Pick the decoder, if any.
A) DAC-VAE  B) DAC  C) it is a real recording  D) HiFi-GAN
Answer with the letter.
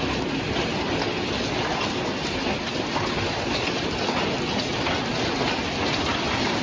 C